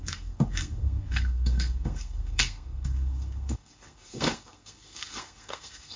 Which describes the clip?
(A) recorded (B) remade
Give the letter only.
B